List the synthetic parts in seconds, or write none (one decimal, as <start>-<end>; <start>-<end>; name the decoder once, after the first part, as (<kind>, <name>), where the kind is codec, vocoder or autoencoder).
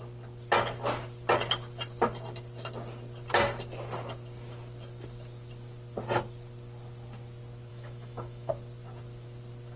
7.7-8.5 (autoencoder, DAC-VAE)